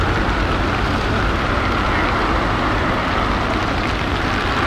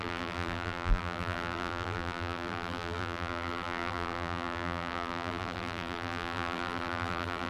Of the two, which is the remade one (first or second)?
second